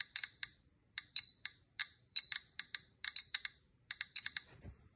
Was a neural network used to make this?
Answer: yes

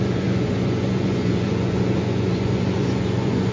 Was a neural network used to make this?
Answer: yes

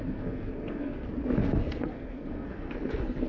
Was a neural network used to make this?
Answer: yes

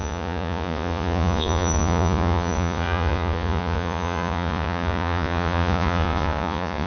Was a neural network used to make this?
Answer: yes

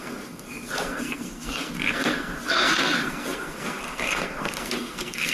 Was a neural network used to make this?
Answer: yes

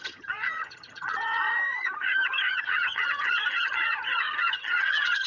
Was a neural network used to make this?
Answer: yes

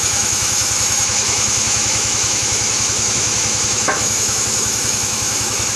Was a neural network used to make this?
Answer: yes